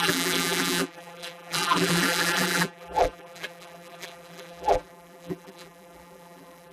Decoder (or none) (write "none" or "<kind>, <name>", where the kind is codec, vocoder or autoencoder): vocoder, BigVGAN v2